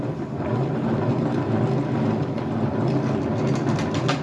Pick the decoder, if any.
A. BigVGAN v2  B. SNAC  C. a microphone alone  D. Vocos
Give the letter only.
C